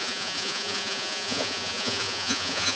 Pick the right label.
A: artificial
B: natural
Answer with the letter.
A